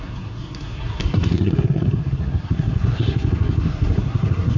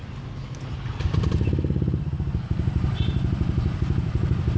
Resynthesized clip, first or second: first